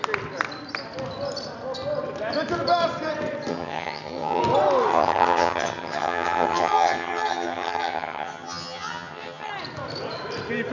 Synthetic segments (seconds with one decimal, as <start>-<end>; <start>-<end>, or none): 3.5-4.4; 4.9-9.5